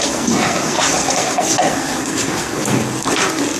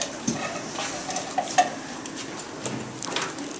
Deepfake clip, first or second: first